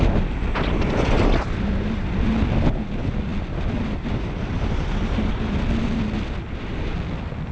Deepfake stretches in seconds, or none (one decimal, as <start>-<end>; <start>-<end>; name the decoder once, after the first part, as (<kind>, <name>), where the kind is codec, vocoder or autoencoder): none